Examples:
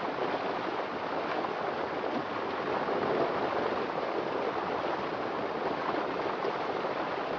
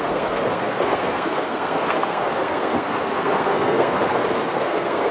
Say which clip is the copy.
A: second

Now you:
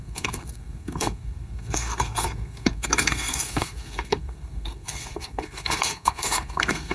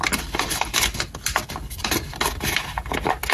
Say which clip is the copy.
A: first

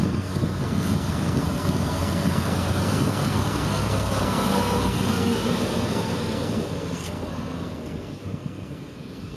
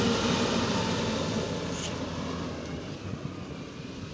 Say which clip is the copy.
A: first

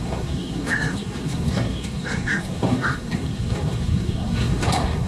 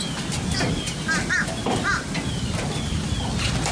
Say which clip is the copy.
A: first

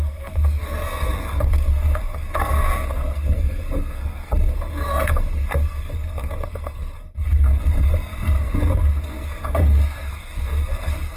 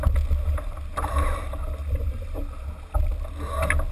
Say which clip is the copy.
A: first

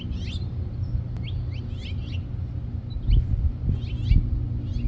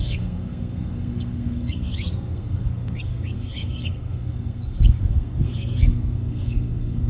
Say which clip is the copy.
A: second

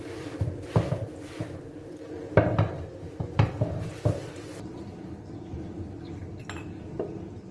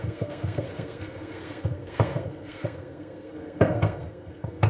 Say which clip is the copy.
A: second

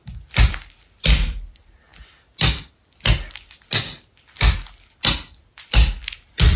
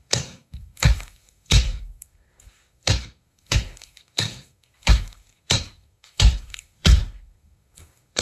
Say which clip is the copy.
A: second